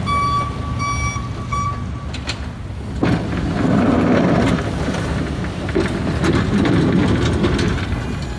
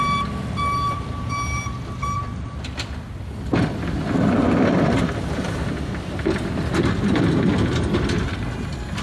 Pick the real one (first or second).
first